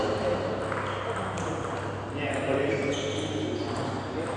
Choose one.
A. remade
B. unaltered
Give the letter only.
B